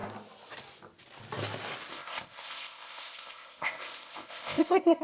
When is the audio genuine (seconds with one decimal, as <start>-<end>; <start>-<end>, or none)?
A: 0.0-1.9